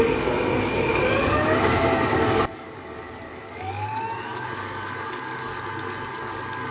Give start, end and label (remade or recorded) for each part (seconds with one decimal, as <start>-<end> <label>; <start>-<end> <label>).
0.0-5.5 remade; 5.5-6.1 recorded; 6.1-6.7 remade